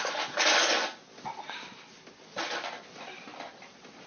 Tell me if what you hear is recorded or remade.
remade